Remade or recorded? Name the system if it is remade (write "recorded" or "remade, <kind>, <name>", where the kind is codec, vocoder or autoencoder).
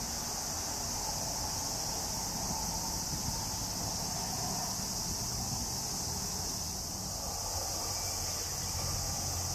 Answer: recorded